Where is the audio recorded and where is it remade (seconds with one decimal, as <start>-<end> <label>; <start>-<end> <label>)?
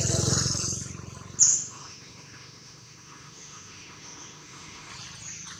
0.0-1.5 recorded; 1.5-4.9 remade; 4.9-5.6 recorded